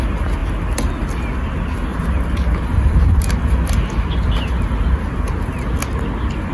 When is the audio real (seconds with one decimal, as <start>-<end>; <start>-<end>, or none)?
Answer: 0.0-6.5